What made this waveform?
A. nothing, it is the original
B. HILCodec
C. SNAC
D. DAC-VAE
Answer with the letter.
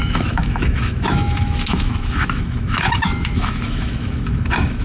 D